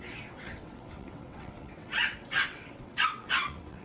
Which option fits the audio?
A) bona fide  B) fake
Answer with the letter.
B